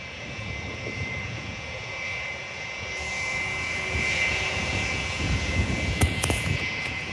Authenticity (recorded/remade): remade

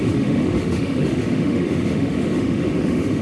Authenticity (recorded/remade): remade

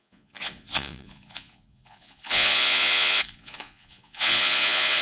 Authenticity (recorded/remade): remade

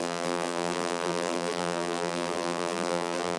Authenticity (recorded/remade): remade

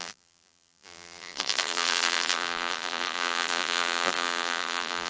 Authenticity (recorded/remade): remade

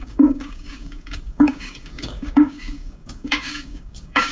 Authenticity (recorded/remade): remade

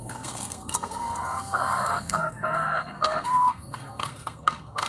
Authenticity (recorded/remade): remade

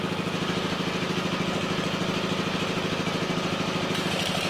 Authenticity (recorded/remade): recorded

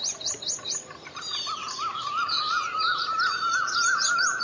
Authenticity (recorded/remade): recorded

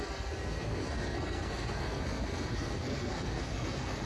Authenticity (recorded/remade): remade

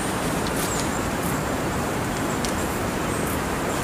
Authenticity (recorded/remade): remade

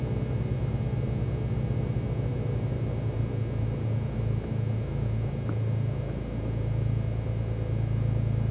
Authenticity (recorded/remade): recorded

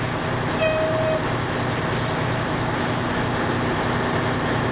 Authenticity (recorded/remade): recorded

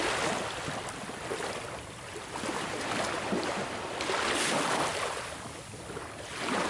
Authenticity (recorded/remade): recorded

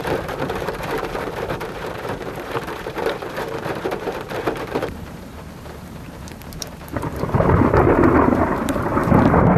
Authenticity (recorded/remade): remade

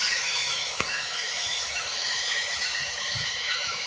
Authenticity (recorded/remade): remade